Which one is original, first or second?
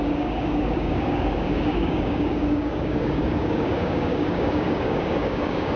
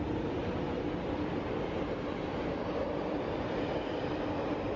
second